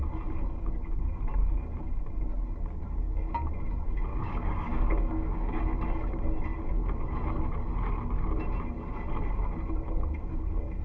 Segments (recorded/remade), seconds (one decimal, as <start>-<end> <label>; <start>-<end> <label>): 0.0-4.1 recorded; 4.1-5.6 remade; 5.6-10.8 recorded